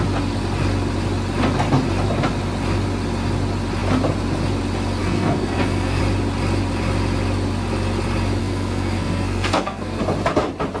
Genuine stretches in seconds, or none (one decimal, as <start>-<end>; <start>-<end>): 0.0-5.0; 6.0-8.4; 10.0-10.8